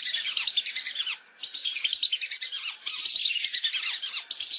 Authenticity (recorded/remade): recorded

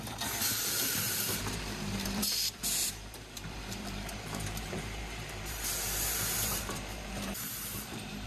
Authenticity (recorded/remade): remade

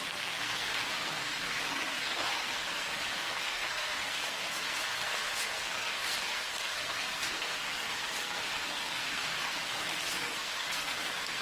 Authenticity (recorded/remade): remade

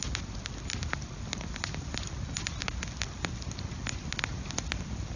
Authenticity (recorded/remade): recorded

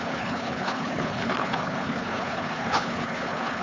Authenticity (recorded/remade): remade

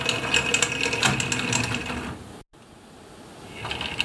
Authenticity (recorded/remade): recorded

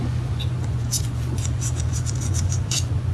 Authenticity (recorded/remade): remade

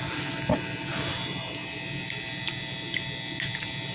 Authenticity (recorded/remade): recorded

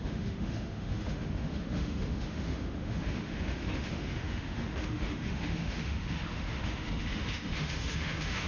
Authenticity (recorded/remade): remade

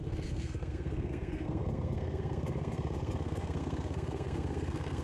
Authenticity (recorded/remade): remade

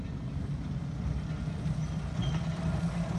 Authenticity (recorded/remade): recorded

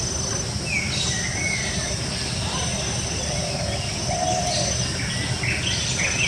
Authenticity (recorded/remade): recorded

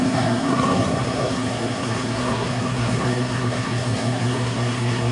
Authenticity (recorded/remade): remade